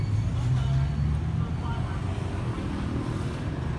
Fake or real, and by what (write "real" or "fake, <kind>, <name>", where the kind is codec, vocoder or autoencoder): real